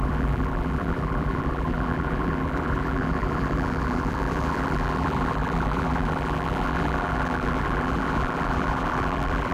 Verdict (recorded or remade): remade